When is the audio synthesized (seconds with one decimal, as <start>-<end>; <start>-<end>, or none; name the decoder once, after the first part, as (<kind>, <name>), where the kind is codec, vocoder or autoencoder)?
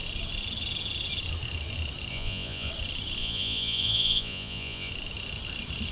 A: 2.1-2.7 (vocoder, Vocos); 3.2-4.9